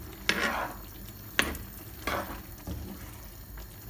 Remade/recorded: recorded